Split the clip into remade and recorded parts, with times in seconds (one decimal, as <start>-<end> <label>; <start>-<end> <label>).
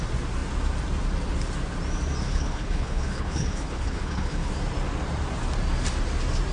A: 0.0-2.2 recorded; 2.2-4.5 remade; 4.5-6.5 recorded